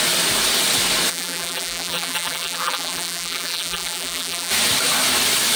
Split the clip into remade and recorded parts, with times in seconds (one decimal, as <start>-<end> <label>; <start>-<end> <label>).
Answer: 0.0-1.1 recorded; 1.1-4.5 remade; 4.5-5.6 recorded